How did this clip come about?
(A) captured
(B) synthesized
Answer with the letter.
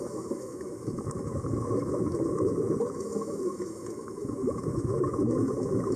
B